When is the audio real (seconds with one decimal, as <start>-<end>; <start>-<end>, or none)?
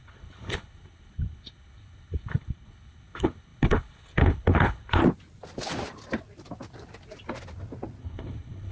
5.0-8.0